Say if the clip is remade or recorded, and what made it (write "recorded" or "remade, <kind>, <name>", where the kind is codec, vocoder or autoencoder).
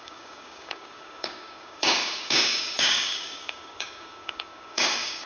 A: remade, codec, DAC